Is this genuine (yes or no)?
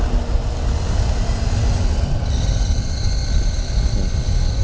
yes